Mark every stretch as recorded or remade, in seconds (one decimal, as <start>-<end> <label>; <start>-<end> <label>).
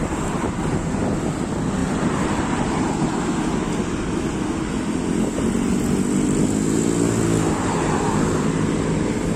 0.0-1.8 recorded; 1.8-2.9 remade; 2.9-9.4 recorded